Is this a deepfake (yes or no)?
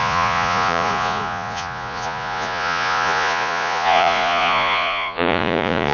yes